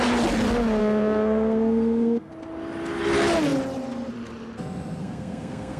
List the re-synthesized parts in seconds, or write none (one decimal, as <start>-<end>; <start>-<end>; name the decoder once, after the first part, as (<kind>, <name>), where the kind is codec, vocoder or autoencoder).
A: 0.8-2.3 (codec, SNAC); 5.0-5.8